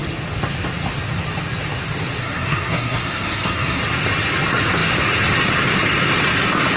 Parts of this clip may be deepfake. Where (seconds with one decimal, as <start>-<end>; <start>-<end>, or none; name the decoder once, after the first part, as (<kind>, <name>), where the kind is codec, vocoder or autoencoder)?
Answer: 2.2-3.8 (codec, SNAC)